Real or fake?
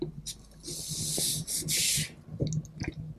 real